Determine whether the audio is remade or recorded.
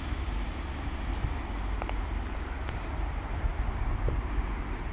recorded